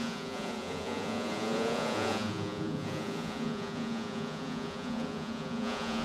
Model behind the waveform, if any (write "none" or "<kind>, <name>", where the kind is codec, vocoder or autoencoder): vocoder, Vocos